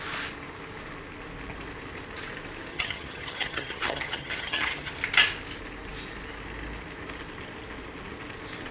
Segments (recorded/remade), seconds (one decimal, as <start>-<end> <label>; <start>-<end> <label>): 0.0-2.7 recorded; 2.7-4.9 remade; 4.9-8.7 recorded